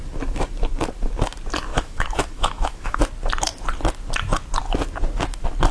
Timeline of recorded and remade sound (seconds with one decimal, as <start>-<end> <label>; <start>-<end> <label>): 0.0-1.7 recorded; 1.7-3.0 remade; 3.0-5.7 recorded